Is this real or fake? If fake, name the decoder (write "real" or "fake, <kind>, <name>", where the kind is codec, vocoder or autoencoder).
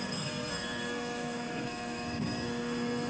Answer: fake, codec, SNAC